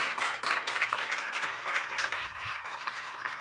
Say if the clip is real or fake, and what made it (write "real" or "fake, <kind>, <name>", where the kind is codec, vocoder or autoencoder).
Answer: fake, codec, SNAC